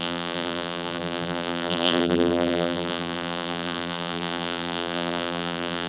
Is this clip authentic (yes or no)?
no